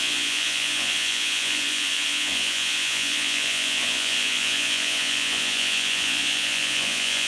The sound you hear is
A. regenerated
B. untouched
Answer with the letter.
A